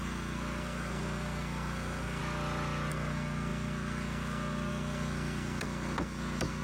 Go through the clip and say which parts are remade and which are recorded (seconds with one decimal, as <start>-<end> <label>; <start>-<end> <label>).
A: 0.0-2.2 remade; 2.2-2.9 recorded; 2.9-6.6 remade